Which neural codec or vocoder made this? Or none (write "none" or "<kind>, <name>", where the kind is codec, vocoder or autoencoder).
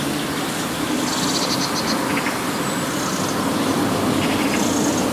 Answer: none